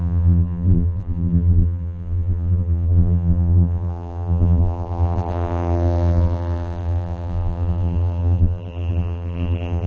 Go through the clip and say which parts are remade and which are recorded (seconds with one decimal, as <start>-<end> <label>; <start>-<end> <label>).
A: 0.0-9.9 remade